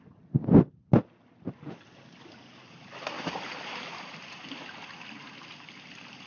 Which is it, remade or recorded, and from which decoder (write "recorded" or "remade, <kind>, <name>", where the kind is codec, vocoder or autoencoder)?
recorded